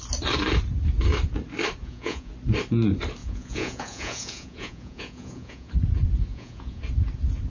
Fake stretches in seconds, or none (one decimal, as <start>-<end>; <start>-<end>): 1.8-2.3; 3.2-5.7; 6.3-6.8